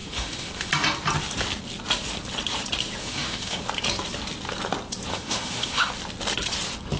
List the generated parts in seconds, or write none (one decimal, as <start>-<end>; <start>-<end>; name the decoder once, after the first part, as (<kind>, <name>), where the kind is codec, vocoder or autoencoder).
0.0-0.7 (autoencoder, DAC-VAE); 3.0-3.6; 5.1-5.9